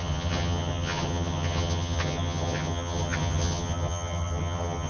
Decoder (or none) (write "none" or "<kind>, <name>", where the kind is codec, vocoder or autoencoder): vocoder, HiFi-GAN